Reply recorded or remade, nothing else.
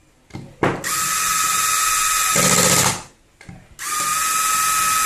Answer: recorded